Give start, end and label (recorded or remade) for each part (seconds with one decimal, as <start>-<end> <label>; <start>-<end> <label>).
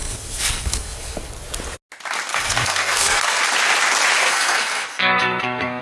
0.0-1.3 remade; 1.3-2.3 recorded; 2.3-3.4 remade; 3.4-4.2 recorded; 4.2-5.8 remade